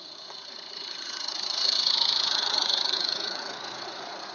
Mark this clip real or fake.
fake